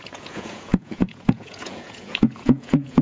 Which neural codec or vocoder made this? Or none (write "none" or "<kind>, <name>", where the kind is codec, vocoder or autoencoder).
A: vocoder, Vocos